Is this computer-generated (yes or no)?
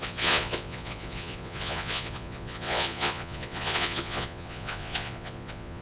yes